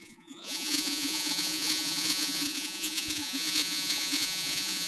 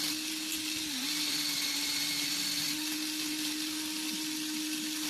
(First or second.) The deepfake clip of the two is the first